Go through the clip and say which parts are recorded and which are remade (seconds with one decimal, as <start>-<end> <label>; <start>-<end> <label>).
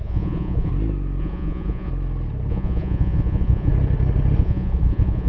0.0-0.7 remade; 0.7-1.2 recorded; 1.2-1.9 remade; 1.9-2.5 recorded; 2.5-3.7 remade; 3.7-4.4 recorded; 4.4-5.3 remade